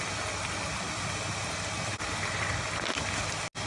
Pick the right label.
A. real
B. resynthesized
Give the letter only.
A